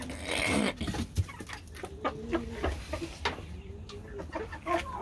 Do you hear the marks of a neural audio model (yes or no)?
no